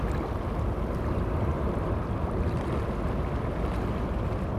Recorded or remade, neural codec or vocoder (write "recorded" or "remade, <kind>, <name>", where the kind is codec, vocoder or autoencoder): recorded